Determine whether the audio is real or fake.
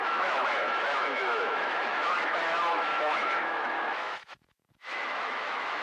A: fake